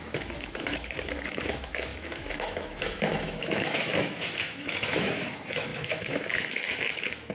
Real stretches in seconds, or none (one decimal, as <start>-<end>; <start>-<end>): none